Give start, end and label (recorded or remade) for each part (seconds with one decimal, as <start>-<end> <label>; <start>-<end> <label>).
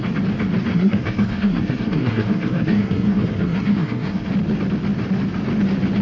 0.0-0.7 recorded; 0.7-4.3 remade; 4.3-6.0 recorded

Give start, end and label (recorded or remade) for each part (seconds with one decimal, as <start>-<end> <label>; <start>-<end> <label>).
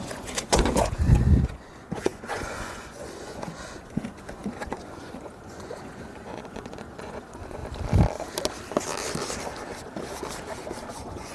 0.0-7.6 remade; 7.6-10.9 recorded; 10.9-11.3 remade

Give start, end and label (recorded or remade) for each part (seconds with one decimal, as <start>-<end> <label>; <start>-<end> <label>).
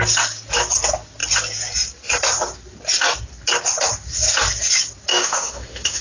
0.0-5.1 recorded; 5.1-6.0 remade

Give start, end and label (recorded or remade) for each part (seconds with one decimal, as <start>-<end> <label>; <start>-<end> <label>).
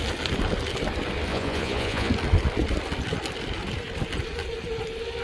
0.0-1.3 recorded; 1.3-2.1 remade; 2.1-5.2 recorded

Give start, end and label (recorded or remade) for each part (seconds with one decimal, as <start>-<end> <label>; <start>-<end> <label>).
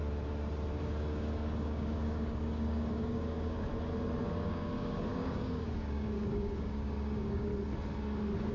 0.0-0.8 recorded; 0.8-3.7 remade; 3.7-4.2 recorded; 4.2-7.5 remade; 7.5-8.5 recorded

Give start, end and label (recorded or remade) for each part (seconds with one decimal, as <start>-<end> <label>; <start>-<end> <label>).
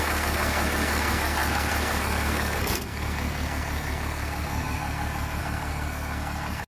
0.0-6.7 remade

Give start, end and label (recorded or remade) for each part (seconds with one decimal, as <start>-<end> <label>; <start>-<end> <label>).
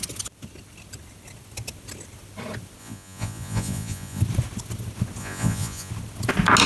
0.0-2.8 recorded; 2.8-4.2 remade; 4.2-5.2 recorded; 5.2-5.9 remade; 5.9-6.7 recorded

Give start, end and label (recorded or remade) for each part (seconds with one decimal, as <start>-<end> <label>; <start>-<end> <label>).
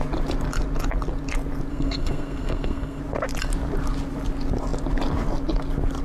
0.0-1.7 recorded; 1.7-3.0 remade; 3.0-6.0 recorded